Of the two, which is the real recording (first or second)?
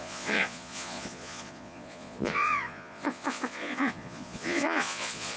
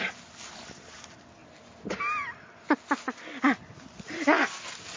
second